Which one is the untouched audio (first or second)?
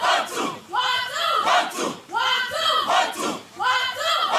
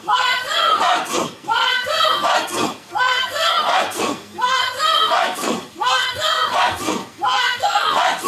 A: first